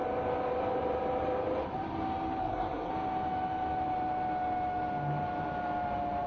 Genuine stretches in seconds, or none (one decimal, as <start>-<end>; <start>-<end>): 0.0-2.4; 2.9-6.3